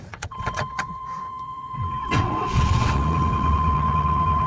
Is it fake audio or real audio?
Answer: fake